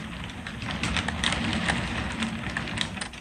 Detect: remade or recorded recorded